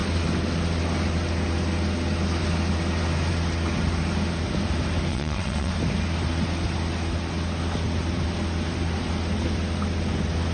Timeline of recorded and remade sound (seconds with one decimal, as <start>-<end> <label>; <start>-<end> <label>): 0.0-5.1 recorded; 5.1-5.7 remade; 5.7-10.5 recorded